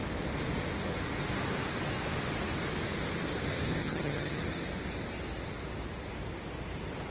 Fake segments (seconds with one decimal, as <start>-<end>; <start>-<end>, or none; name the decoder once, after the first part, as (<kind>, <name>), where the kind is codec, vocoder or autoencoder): 3.8-4.4 (vocoder, HiFi-GAN)